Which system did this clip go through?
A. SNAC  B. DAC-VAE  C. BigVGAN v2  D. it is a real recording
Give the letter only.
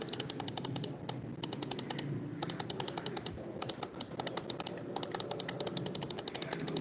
D